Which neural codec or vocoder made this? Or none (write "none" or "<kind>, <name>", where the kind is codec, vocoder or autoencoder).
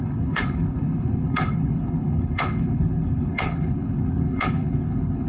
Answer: codec, HILCodec